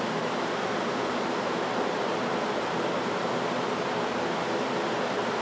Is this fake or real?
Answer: fake